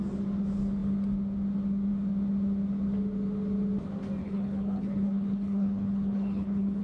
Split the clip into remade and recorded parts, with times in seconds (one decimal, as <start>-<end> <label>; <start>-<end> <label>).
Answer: 0.0-4.2 recorded; 4.2-6.8 remade